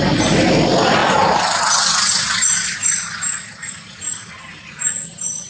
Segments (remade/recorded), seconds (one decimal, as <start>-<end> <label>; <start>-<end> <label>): 0.0-5.5 recorded